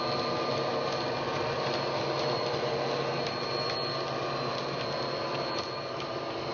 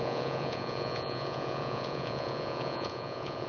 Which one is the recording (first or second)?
first